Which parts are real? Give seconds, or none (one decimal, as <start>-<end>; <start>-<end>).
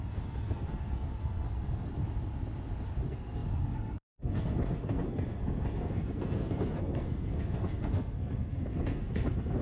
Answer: 1.9-3.0